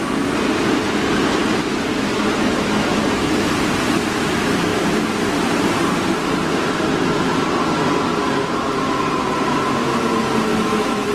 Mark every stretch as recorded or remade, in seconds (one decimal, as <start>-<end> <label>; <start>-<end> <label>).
0.0-1.4 recorded; 1.4-3.0 remade; 3.0-10.5 recorded; 10.5-11.1 remade